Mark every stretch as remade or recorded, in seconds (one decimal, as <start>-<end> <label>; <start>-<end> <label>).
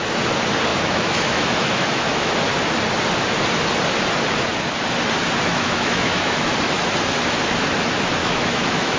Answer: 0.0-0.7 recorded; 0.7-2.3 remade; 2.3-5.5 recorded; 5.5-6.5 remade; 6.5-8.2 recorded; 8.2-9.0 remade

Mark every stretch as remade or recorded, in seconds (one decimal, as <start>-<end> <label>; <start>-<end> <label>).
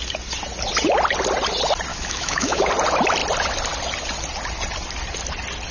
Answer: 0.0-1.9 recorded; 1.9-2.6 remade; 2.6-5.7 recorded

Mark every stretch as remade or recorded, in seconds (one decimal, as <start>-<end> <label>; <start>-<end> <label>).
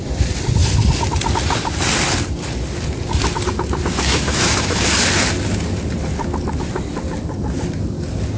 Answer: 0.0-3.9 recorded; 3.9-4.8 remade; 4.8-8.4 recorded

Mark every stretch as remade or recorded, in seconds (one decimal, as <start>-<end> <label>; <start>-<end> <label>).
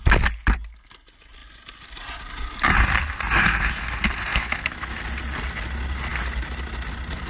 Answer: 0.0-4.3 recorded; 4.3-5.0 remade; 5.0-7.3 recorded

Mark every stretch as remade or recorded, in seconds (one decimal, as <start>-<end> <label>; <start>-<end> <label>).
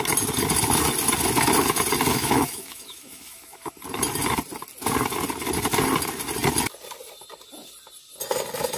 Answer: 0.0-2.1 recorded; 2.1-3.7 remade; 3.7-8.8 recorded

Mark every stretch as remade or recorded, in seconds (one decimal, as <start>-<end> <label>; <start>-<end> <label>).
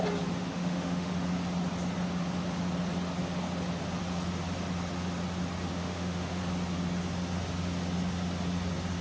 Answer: 0.0-0.5 recorded; 0.5-1.1 remade; 1.1-5.8 recorded; 5.8-6.4 remade; 6.4-9.0 recorded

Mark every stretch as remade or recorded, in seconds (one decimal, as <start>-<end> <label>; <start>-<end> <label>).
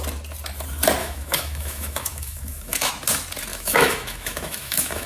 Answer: 0.0-1.0 recorded; 1.0-2.9 remade; 2.9-3.5 recorded; 3.5-5.1 remade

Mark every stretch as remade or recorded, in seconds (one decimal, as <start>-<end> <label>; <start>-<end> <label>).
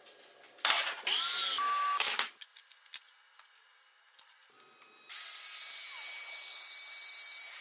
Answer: 0.0-7.6 recorded